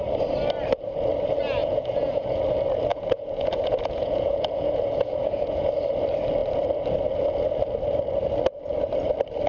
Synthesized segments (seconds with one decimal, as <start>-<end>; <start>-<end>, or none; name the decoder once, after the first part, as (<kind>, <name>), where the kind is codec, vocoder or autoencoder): 1.6-2.4 (vocoder, Vocos); 2.9-5.7